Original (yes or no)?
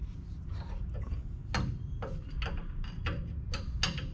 yes